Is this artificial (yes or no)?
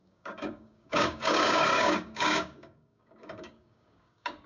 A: yes